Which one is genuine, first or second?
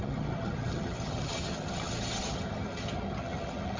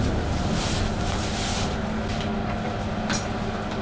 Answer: second